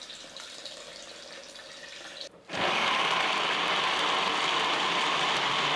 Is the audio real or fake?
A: real